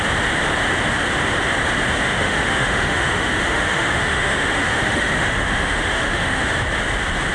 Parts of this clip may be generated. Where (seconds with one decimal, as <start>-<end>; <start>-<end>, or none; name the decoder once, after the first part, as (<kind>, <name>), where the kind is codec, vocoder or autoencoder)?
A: 2.1-6.5 (autoencoder, DAC-VAE)